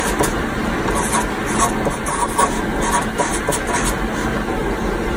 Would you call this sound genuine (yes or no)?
yes